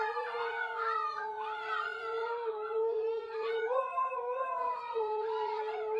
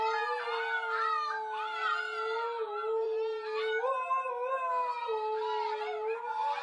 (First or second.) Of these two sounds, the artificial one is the first